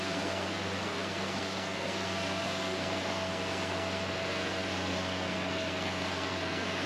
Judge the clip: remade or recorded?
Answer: remade